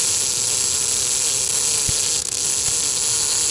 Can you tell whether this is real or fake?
real